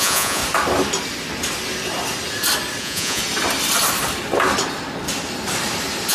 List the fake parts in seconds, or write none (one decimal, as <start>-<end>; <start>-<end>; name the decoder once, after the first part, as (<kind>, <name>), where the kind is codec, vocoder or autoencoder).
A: 0.0-0.4 (vocoder, Vocos); 2.8-3.2